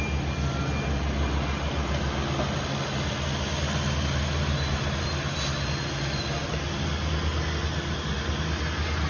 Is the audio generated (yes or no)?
no